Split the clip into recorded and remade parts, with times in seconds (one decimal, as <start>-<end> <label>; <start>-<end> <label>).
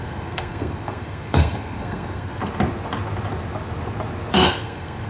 0.0-2.4 remade; 2.4-4.3 recorded; 4.3-5.1 remade